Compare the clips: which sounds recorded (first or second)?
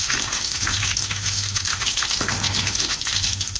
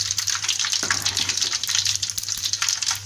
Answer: second